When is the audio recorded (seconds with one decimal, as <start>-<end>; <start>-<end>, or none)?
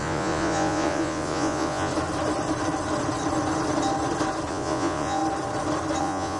1.9-4.5; 5.2-6.0